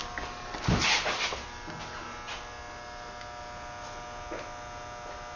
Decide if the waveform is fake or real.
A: real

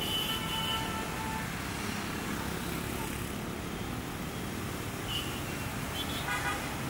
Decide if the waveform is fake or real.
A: real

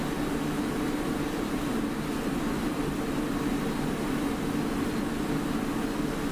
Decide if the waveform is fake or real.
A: real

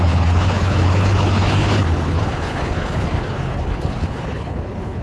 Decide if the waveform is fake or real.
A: fake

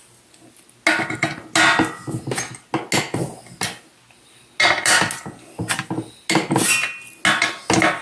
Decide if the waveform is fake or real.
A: real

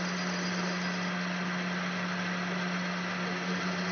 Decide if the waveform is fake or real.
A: real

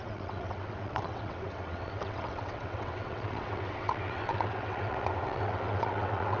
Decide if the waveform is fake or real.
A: fake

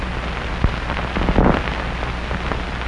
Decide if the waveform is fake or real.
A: real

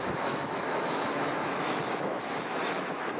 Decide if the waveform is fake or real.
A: fake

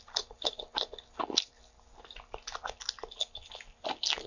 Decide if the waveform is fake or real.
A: real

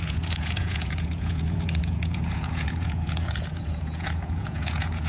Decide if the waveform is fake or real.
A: fake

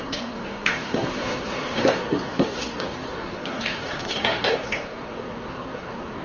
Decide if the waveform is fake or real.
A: fake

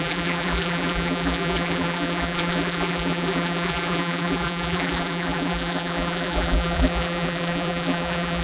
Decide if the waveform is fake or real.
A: fake